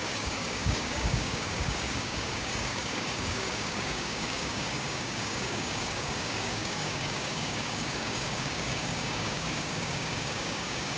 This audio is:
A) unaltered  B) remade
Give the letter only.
B